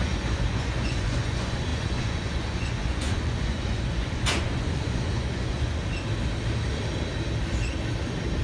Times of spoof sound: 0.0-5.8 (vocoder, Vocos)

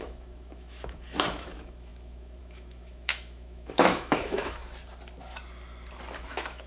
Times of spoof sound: 0.0-4.6 (autoencoder, DAC-VAE); 6.2-6.7